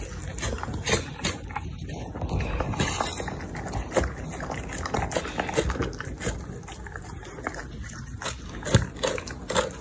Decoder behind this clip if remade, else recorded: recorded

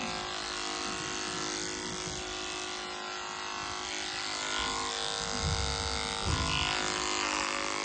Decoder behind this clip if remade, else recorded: recorded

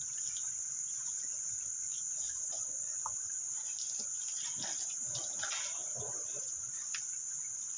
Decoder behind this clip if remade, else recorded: recorded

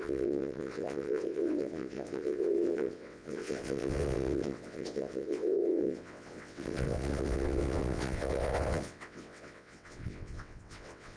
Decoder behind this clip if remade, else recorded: remade, vocoder, WaveNeXt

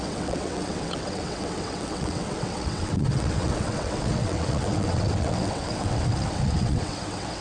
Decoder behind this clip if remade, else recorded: remade, vocoder, WaveNeXt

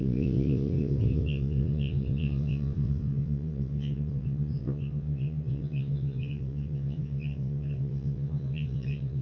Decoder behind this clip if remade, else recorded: remade, vocoder, WaveNeXt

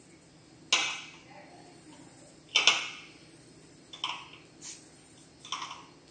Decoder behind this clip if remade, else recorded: recorded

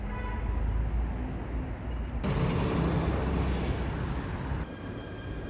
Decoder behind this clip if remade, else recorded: recorded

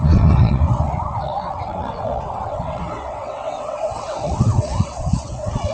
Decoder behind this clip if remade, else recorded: remade, vocoder, WaveNeXt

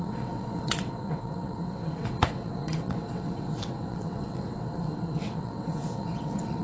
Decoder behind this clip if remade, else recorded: remade, vocoder, WaveNeXt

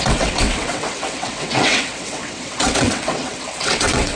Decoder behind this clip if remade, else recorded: remade, vocoder, WaveNeXt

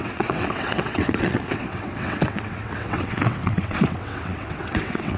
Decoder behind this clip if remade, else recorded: remade, vocoder, WaveNeXt